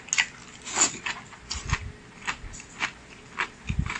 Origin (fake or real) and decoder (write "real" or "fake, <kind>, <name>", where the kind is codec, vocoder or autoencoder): real